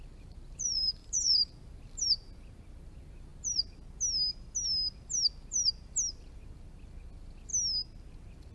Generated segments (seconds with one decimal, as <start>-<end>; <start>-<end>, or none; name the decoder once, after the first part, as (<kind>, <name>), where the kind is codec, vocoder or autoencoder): 1.0-1.5 (vocoder, BigVGAN v2)